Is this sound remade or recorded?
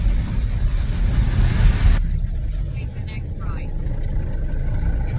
recorded